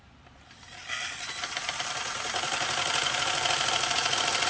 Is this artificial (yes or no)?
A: no